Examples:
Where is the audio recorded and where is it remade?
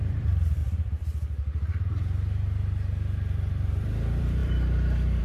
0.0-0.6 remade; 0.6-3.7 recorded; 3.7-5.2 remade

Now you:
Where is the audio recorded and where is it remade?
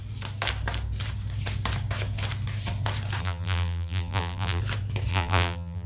0.0-3.2 recorded; 3.2-4.6 remade; 4.6-5.1 recorded; 5.1-5.9 remade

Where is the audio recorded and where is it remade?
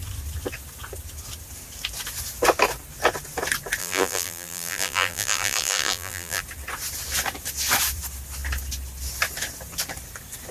0.0-3.8 recorded; 3.8-6.4 remade; 6.4-10.5 recorded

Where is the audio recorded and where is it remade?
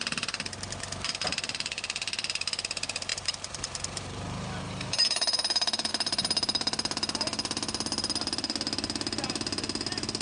0.0-3.1 recorded; 3.1-5.9 remade; 5.9-10.2 recorded